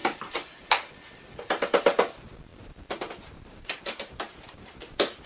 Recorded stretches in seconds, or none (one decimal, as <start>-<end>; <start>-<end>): 0.7-2.5

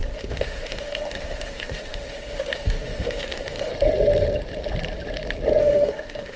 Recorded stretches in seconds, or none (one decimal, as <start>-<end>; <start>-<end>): 3.7-5.6